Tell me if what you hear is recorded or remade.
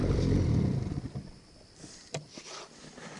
remade